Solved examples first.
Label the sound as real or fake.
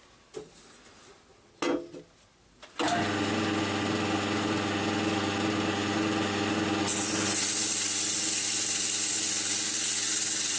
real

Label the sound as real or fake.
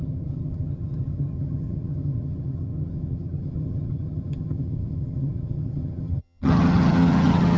fake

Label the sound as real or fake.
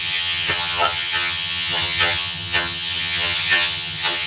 fake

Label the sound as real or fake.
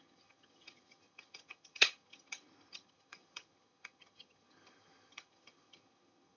fake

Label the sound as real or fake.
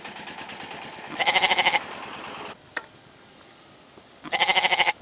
real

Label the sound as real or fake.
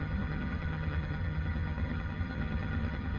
fake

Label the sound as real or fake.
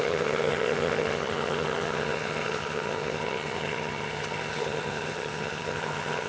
fake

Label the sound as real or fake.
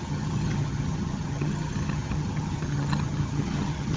fake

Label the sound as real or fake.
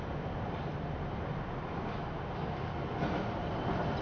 real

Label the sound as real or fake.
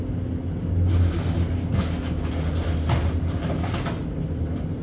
real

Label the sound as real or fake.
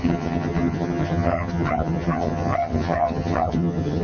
fake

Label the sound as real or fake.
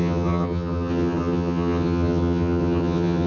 fake